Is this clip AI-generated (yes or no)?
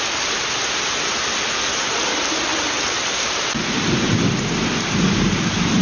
yes